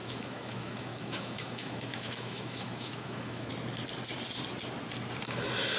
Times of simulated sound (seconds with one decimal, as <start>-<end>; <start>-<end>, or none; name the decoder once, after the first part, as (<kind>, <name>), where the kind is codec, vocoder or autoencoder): 0.0-3.5 (autoencoder, DAC-VAE)